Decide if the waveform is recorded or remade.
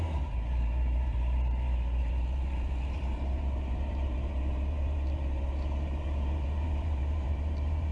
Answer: remade